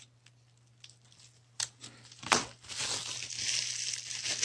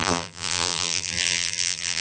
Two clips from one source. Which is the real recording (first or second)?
first